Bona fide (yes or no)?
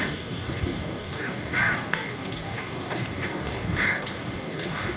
no